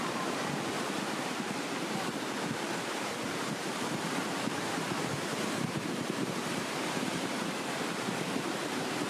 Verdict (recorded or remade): remade